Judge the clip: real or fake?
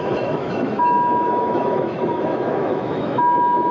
fake